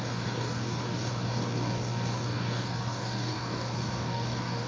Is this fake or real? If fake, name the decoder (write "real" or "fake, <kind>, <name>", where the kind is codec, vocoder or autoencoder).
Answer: fake, codec, DAC